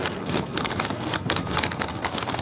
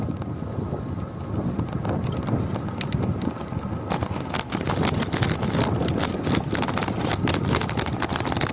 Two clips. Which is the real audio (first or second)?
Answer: second